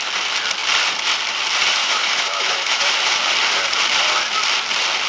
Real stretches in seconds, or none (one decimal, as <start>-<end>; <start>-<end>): 0.0-1.8; 2.9-5.1